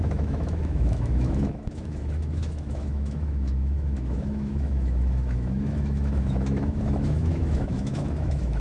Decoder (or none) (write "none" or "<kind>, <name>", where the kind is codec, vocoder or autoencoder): autoencoder, DAC-VAE